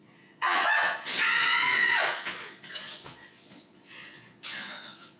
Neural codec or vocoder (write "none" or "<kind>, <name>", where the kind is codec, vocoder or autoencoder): vocoder, Vocos